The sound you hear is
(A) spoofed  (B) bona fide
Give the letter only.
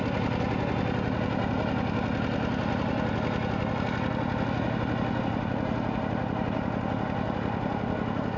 B